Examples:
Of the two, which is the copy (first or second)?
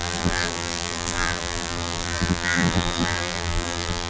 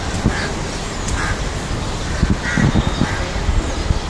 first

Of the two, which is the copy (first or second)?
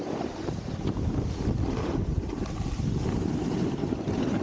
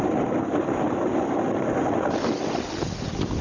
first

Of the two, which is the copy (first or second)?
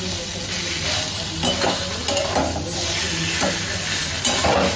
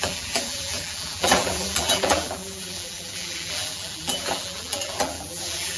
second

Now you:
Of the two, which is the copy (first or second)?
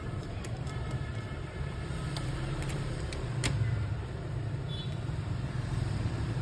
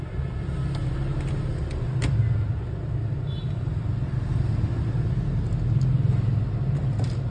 first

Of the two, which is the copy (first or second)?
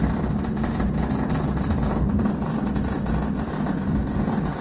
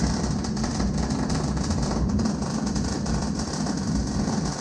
second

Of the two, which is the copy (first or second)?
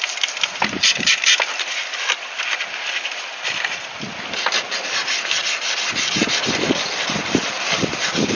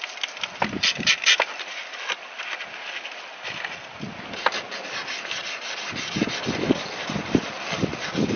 first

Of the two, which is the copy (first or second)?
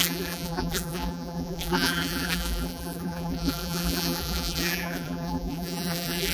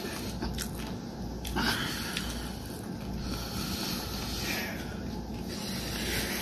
first